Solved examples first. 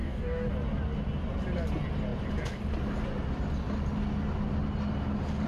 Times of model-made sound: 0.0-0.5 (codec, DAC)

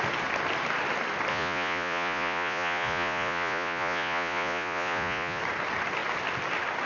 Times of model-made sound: 1.3-5.4 (vocoder, Vocos)